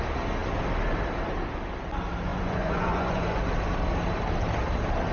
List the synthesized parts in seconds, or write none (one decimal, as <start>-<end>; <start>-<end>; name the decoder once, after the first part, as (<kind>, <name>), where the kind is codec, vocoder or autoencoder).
2.3-3.4 (vocoder, Vocos)